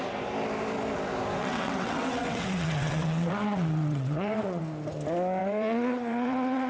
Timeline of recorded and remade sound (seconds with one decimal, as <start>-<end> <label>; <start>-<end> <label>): 0.0-1.4 recorded; 1.4-4.6 remade; 4.6-5.4 recorded; 5.4-6.7 remade